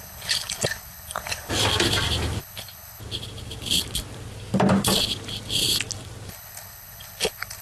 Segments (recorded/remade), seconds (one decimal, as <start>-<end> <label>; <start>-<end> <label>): 0.0-1.5 remade; 1.5-2.4 recorded; 2.4-3.0 remade; 3.0-6.3 recorded; 6.3-7.6 remade